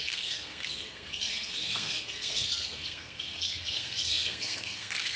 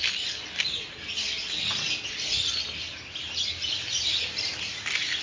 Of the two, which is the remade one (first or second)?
first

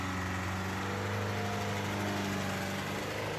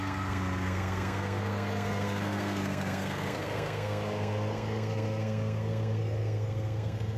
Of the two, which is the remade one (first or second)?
second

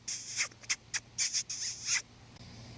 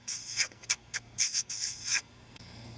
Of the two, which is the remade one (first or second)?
second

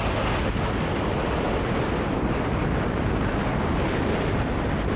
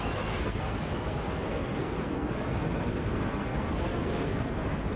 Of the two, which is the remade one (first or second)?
second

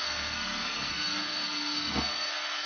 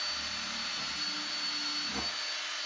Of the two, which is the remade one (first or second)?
first